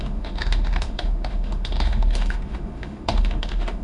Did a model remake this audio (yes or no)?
yes